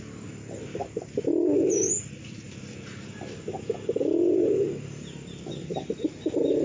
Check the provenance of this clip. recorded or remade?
recorded